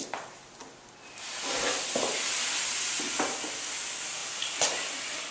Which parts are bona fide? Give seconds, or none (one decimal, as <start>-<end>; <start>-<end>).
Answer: 0.0-5.3